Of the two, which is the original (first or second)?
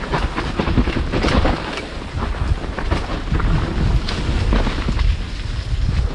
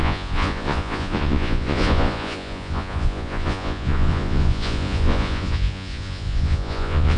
first